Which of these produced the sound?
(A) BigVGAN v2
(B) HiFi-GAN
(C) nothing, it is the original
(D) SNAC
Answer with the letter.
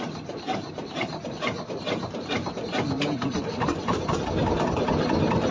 A